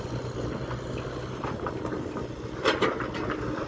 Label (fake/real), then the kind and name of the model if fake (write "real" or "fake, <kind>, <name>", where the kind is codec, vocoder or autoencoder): real